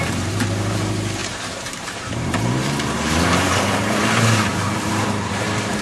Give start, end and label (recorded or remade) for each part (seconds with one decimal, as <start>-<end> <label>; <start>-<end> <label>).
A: 0.0-5.8 remade